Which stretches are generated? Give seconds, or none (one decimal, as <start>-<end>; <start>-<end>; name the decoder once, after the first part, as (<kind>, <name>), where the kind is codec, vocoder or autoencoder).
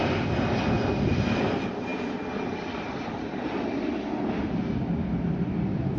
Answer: 5.0-5.6 (vocoder, BigVGAN v2)